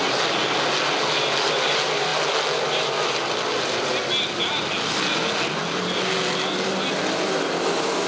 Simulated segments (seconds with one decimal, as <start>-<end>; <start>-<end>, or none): none